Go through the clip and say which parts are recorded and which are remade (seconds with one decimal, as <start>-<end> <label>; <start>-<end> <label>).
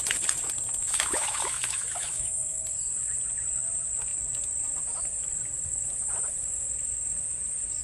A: 0.0-0.8 recorded; 0.8-2.6 remade; 2.6-7.8 recorded